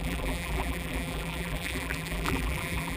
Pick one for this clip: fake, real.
fake